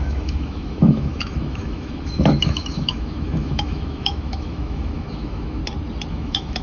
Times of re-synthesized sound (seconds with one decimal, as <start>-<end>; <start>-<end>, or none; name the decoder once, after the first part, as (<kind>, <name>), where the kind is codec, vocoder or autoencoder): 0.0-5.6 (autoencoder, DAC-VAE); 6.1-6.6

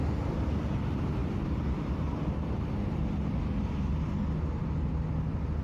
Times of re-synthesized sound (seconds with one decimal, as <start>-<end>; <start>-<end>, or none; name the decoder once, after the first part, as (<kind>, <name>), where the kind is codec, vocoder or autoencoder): none

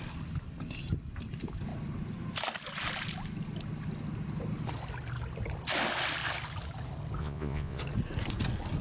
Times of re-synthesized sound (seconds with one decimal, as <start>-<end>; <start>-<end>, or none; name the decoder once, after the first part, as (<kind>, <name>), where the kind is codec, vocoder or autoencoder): 7.2-7.8 (vocoder, Vocos)